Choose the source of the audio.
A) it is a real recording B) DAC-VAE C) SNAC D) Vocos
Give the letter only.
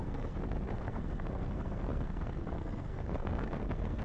C